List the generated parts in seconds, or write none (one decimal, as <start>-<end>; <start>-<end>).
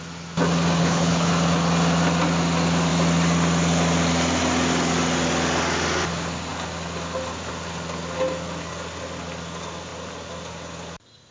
0.8-1.3